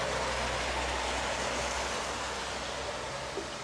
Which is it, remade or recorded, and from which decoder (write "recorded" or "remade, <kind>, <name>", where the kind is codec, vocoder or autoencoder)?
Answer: recorded